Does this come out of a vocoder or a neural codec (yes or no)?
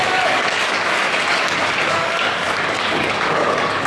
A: yes